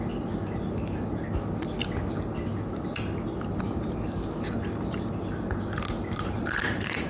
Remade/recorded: recorded